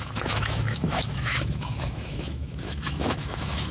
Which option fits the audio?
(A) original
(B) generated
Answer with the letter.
B